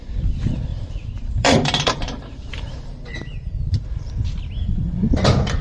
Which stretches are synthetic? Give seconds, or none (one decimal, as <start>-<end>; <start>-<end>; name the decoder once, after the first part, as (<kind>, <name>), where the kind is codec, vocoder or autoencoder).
0.7-4.1 (vocoder, BigVGAN v2)